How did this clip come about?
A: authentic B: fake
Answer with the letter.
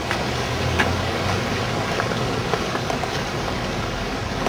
B